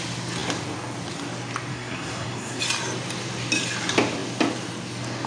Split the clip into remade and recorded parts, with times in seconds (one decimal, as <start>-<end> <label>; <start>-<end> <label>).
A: 0.0-1.7 recorded; 1.7-2.6 remade; 2.6-5.3 recorded